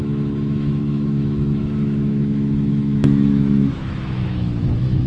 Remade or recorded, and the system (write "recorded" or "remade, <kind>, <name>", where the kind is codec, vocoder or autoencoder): remade, autoencoder, DAC-VAE